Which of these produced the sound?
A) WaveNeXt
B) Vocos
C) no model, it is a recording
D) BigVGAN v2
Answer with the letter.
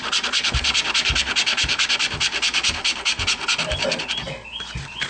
C